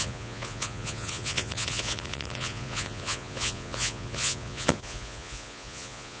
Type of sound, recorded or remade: remade